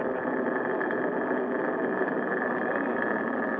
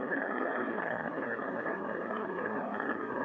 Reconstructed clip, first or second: second